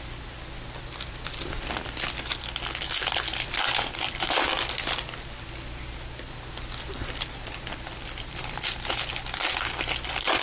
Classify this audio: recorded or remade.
recorded